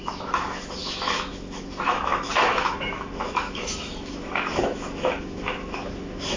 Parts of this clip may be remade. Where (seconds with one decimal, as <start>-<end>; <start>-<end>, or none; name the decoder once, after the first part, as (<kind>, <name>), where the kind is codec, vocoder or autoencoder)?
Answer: 0.0-6.4 (autoencoder, DAC-VAE)